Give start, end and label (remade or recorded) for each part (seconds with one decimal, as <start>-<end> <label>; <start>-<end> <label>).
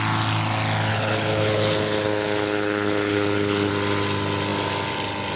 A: 0.0-0.9 recorded; 0.9-3.7 remade; 3.7-5.4 recorded